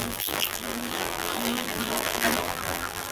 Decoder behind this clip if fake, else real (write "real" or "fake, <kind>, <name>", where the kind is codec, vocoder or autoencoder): fake, vocoder, BigVGAN v2